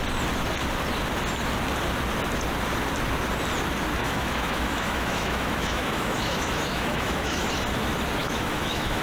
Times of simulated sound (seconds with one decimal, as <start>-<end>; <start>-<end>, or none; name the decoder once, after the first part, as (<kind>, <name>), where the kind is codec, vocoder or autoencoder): 4.0-7.5 (autoencoder, DAC-VAE); 8.2-9.0